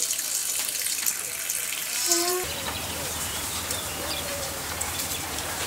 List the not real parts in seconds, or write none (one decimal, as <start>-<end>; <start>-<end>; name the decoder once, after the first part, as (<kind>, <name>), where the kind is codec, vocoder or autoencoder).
0.4-1.0 (vocoder, BigVGAN v2); 1.8-5.1